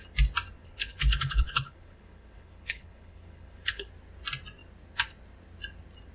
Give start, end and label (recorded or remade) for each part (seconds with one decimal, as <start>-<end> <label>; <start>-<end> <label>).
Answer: 0.0-0.6 recorded; 0.6-3.9 remade; 3.9-6.1 recorded